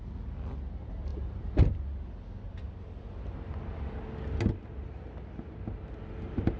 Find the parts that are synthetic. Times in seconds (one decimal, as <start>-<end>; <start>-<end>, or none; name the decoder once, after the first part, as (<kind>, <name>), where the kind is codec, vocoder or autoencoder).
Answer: none